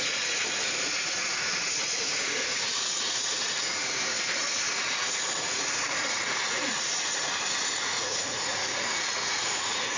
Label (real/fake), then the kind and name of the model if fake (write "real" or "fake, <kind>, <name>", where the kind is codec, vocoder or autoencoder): fake, vocoder, Vocos